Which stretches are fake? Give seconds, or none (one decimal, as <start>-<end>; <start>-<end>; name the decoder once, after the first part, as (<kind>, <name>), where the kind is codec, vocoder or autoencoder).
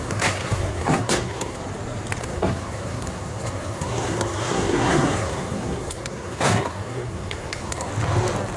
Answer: 0.0-1.6 (codec, SNAC); 2.2-7.9